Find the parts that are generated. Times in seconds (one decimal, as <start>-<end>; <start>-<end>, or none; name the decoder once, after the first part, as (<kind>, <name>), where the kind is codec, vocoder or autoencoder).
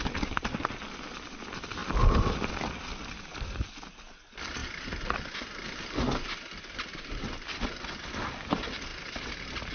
1.8-2.5 (vocoder, BigVGAN v2)